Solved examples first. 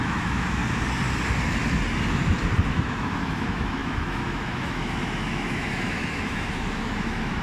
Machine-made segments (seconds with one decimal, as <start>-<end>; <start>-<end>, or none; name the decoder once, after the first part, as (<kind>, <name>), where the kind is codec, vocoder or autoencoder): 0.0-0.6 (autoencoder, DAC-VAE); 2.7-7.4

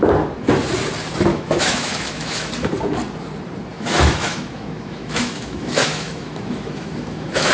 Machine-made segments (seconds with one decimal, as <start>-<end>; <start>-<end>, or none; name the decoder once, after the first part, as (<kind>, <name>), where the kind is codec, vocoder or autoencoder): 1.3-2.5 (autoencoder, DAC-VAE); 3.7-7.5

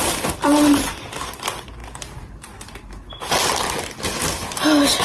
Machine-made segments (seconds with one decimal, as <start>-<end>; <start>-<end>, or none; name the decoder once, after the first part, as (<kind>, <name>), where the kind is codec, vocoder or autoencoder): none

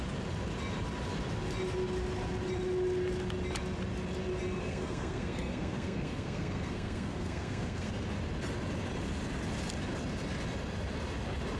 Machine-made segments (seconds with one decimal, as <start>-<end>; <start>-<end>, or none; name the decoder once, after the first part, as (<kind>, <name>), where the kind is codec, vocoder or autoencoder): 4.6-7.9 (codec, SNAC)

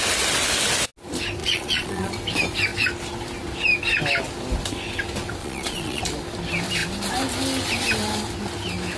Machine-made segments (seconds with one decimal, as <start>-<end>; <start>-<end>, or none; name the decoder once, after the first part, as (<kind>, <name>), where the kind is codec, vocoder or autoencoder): 1.4-2.1 (vocoder, Vocos); 5.4-6.0

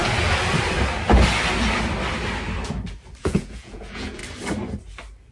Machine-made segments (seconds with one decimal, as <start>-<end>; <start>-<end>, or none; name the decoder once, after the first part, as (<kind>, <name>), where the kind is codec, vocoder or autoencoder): 3.2-4.2 (vocoder, Vocos)

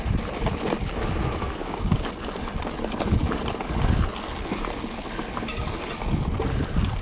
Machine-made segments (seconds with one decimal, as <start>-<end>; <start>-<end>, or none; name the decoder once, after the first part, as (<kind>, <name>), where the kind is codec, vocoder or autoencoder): 1.6-2.1 (codec, DAC)